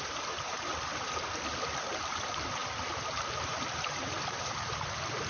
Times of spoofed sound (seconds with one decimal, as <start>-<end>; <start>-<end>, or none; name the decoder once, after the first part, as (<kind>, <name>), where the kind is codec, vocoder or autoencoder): 0.0-0.7 (vocoder, BigVGAN v2); 1.9-5.3